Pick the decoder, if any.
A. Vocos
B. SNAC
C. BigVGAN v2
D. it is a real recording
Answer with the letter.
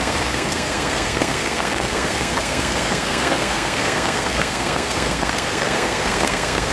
B